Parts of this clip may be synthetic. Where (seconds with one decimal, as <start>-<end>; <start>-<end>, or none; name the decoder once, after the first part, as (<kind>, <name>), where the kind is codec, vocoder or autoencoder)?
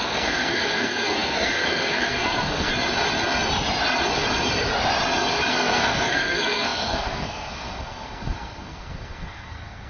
0.0-2.7 (codec, SNAC); 5.5-9.9